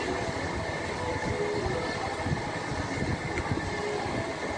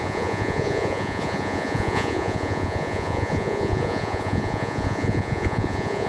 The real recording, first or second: first